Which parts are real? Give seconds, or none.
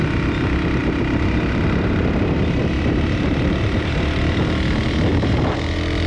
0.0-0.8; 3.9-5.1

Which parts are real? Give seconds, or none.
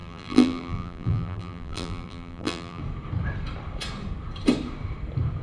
2.8-5.4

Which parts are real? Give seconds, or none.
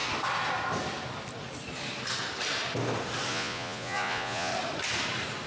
0.0-3.3; 4.5-5.5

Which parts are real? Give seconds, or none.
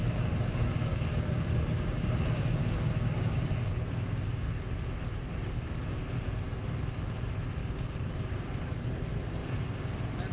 4.5-7.6; 8.6-10.3